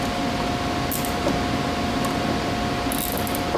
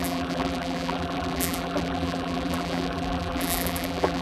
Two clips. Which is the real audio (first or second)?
first